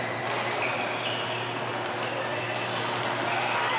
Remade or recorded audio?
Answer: recorded